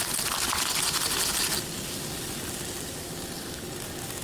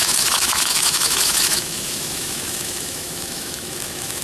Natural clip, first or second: first